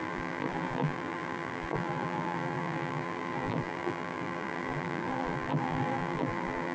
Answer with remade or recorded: remade